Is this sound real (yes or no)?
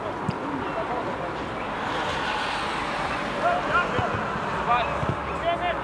yes